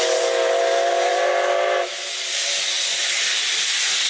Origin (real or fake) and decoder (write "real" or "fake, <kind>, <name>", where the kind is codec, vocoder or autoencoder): real